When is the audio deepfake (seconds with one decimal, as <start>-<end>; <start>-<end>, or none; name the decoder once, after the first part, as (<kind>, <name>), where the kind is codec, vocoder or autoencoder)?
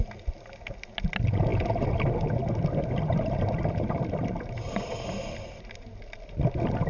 none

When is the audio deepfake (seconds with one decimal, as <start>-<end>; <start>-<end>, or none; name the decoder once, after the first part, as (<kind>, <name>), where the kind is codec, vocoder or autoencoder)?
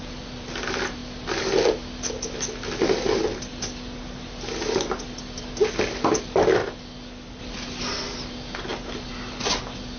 none